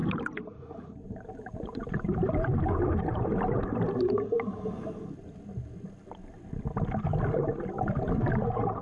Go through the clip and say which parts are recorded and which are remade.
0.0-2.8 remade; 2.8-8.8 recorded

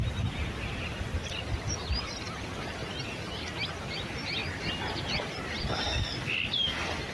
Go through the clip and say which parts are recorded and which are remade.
0.0-2.4 remade; 2.4-4.4 recorded; 4.4-6.0 remade; 6.0-7.1 recorded

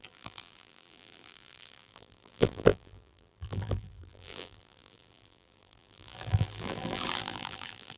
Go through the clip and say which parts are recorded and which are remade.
0.0-8.0 remade

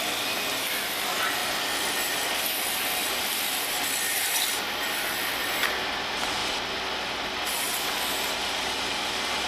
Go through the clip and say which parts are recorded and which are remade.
0.0-1.4 remade; 1.4-2.1 recorded; 2.1-6.4 remade; 6.4-8.3 recorded; 8.3-9.5 remade

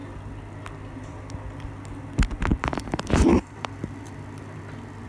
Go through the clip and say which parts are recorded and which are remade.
0.0-2.5 recorded; 2.5-4.6 remade; 4.6-5.1 recorded

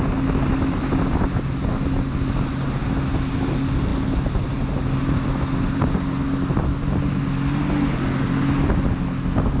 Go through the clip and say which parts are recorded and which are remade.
0.0-9.6 recorded